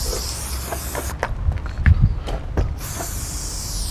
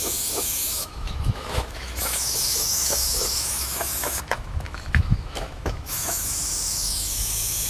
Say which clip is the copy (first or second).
second